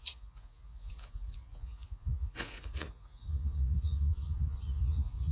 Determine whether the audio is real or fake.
fake